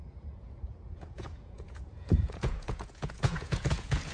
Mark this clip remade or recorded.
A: remade